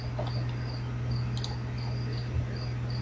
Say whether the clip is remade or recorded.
recorded